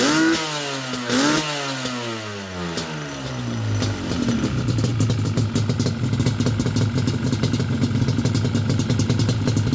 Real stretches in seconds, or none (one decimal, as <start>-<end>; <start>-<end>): 0.0-9.7